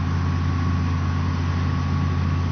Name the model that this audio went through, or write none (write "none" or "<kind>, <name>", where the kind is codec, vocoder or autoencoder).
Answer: none